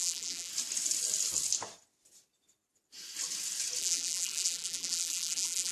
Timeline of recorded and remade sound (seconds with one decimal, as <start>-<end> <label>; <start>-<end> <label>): 0.0-0.5 remade; 0.5-3.8 recorded; 3.8-5.7 remade